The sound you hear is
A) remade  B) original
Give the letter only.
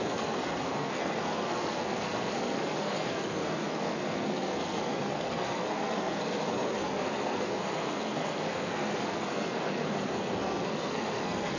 A